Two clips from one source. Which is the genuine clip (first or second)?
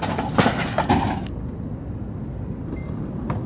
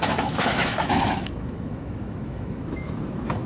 first